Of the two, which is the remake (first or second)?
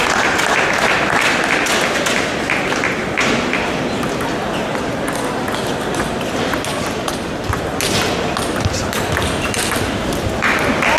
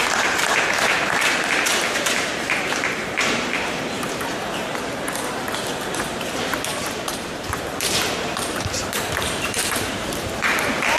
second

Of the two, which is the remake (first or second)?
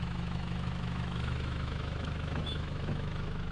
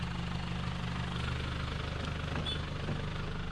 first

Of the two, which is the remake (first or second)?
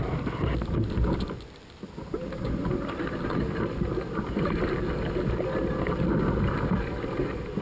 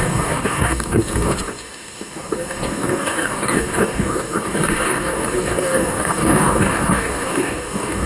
second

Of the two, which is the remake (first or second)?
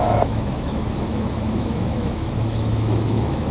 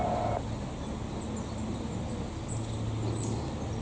first